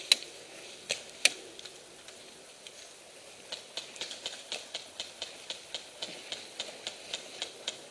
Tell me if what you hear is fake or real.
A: real